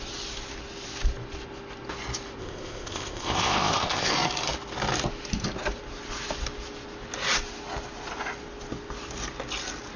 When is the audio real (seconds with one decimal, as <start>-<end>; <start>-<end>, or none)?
0.0-2.4; 4.1-10.0